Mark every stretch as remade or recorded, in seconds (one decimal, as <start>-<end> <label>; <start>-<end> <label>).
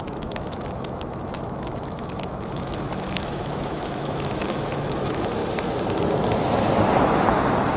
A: 0.0-5.4 remade; 5.4-7.8 recorded